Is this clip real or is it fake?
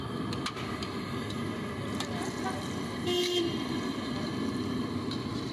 real